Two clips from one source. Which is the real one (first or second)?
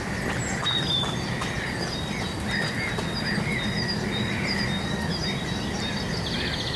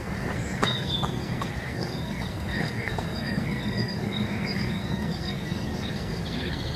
first